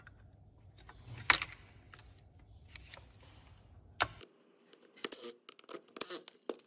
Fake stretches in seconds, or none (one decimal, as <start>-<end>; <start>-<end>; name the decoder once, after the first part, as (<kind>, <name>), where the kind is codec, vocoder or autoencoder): none